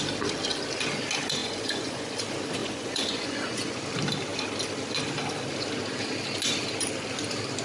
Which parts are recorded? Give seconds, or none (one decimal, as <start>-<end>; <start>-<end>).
0.0-1.4; 2.1-2.6; 3.8-7.6